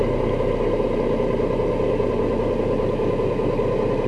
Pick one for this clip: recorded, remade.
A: recorded